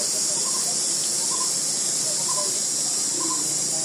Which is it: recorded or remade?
recorded